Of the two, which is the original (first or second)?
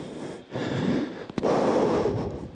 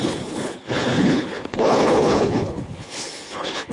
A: first